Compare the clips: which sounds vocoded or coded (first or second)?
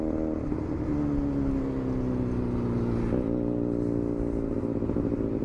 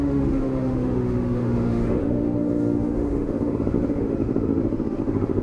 second